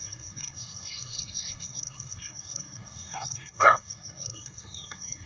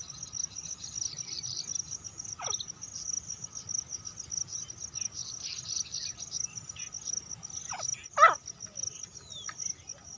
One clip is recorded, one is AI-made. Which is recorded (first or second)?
second